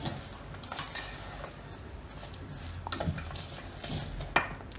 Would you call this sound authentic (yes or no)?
yes